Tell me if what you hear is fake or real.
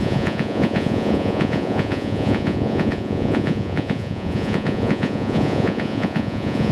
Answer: fake